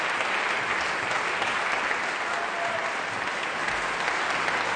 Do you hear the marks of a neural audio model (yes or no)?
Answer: no